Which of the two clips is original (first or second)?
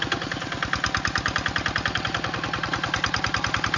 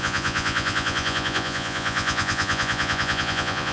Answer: first